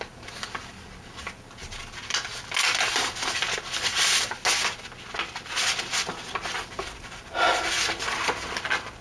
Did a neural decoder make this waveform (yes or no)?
no